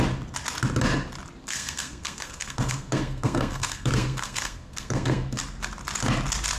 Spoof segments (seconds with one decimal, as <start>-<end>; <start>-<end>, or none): 1.4-5.4